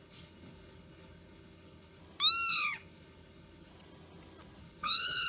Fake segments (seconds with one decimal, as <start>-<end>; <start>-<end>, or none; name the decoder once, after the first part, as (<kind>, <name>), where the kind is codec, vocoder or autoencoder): 0.0-2.0 (codec, HILCodec); 2.5-3.7; 4.6-5.3